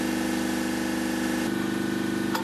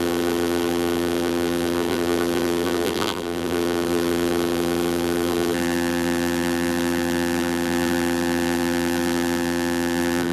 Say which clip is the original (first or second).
first